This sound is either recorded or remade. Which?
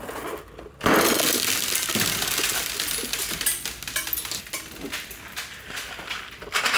recorded